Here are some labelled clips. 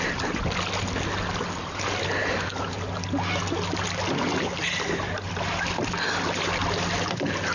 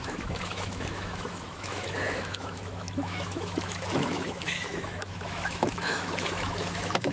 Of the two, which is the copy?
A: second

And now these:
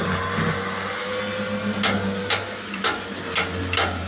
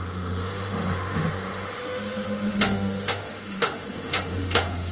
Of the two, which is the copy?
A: second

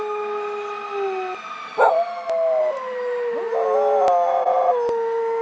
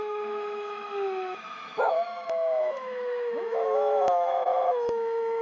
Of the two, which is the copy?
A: second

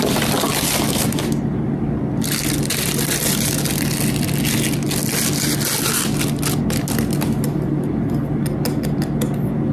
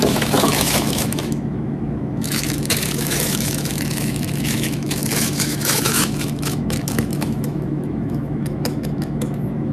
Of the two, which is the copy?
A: second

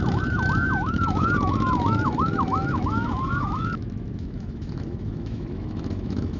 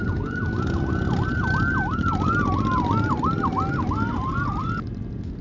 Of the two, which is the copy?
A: first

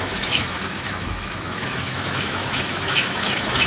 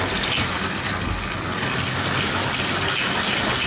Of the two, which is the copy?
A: first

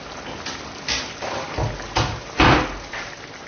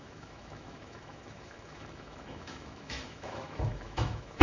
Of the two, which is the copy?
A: second